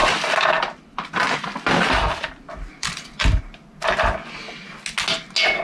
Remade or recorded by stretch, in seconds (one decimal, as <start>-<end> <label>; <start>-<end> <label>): 0.0-3.4 remade; 3.4-5.6 recorded